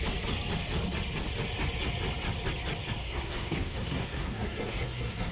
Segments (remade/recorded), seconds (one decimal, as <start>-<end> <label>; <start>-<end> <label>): 0.0-3.0 recorded; 3.0-5.3 remade